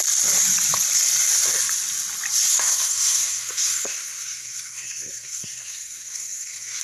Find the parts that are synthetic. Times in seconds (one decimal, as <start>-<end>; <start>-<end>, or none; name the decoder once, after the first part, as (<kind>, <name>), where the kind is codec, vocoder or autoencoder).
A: 2.5-6.8 (codec, SNAC)